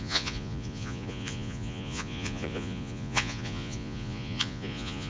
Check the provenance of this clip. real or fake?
fake